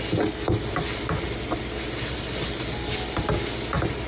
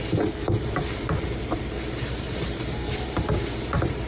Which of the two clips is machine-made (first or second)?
second